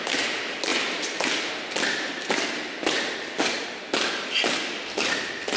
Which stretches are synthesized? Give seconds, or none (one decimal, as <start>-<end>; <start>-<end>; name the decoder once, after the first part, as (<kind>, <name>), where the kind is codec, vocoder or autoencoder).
none